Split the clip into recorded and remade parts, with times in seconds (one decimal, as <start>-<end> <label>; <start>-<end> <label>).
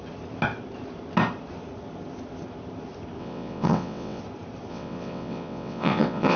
0.0-3.2 recorded; 3.2-4.2 remade; 4.2-4.7 recorded; 4.7-6.4 remade